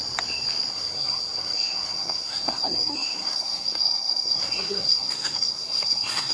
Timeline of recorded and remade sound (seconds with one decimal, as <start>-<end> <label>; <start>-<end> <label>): 0.0-0.7 recorded; 0.7-6.3 remade